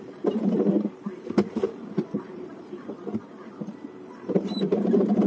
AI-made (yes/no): yes